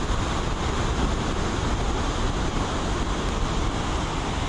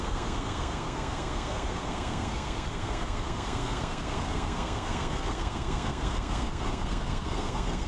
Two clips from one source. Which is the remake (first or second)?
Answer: second